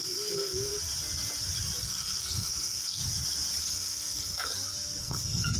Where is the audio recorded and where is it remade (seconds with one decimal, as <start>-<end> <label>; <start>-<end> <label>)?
0.0-0.7 remade; 0.7-1.8 recorded; 1.8-3.0 remade; 3.0-3.6 recorded; 3.6-4.5 remade; 4.5-5.0 recorded; 5.0-5.6 remade